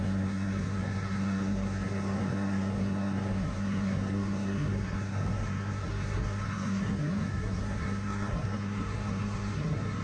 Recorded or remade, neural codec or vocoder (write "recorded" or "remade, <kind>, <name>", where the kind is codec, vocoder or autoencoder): remade, codec, SNAC